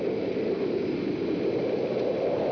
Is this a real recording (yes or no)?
yes